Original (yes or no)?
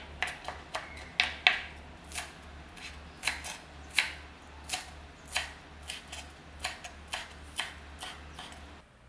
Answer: yes